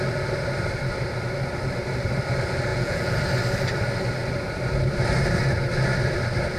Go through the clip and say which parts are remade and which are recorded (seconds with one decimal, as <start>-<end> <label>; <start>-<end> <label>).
0.0-2.7 recorded; 2.7-3.2 remade; 3.2-6.6 recorded